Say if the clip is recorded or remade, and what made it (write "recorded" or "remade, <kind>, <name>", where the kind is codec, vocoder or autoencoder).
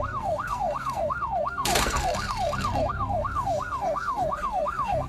remade, codec, SNAC